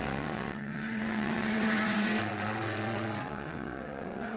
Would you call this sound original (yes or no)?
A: no